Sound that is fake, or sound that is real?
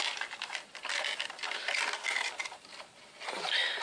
real